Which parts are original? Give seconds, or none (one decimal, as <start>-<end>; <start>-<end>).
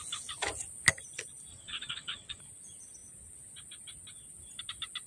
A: 0.0-1.5; 2.4-5.1